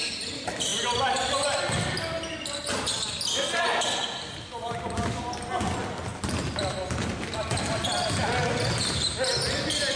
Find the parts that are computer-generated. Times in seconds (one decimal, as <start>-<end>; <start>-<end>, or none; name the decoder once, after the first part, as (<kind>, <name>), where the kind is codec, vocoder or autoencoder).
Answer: none